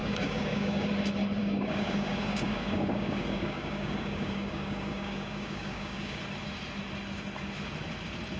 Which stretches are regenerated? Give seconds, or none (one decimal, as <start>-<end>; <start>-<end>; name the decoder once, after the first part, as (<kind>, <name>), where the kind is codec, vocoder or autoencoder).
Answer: 0.0-0.9 (codec, DAC); 1.4-6.2